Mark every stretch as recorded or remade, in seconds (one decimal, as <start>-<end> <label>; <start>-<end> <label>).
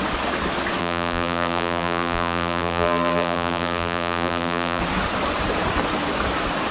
0.0-0.8 recorded; 0.8-4.8 remade; 4.8-6.7 recorded